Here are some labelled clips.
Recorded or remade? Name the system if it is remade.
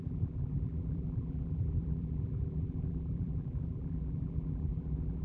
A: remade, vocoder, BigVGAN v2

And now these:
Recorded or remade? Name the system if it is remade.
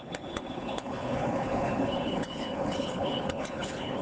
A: remade, codec, HILCodec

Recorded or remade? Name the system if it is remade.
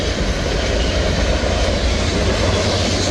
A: recorded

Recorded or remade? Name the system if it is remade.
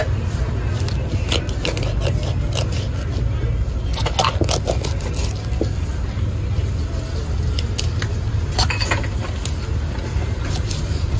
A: recorded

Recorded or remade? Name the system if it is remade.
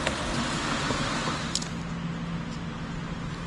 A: recorded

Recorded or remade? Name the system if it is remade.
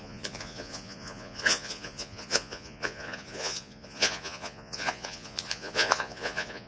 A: remade, vocoder, Vocos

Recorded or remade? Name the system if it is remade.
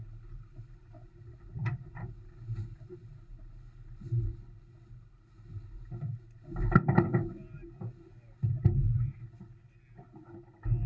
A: recorded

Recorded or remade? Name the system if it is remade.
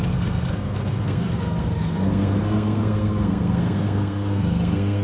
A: remade, codec, SNAC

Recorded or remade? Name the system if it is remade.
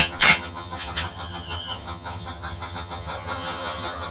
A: remade, vocoder, HiFi-GAN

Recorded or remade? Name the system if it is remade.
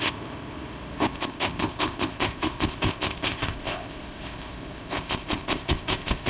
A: remade, codec, ZipCodec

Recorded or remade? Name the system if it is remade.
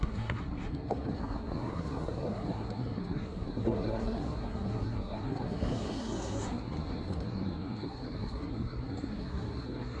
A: remade, codec, SNAC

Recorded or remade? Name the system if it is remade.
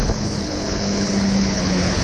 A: remade, codec, HILCodec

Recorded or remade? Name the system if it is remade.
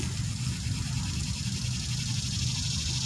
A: recorded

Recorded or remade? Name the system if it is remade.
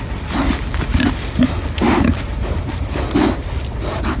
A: recorded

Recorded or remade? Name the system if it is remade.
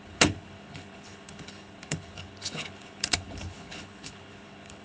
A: remade, codec, HILCodec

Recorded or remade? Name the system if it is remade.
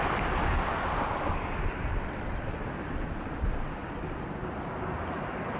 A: recorded